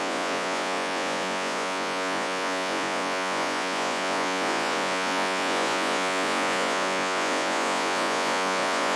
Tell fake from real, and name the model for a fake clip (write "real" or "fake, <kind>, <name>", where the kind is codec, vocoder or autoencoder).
fake, vocoder, Vocos